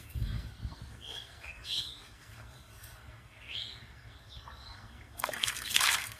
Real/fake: fake